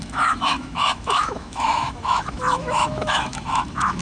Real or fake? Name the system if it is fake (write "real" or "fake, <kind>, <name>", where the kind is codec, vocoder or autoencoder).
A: fake, autoencoder, DAC-VAE